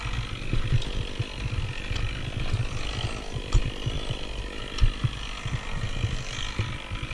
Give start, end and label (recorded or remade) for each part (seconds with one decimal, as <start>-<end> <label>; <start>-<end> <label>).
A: 0.0-7.1 recorded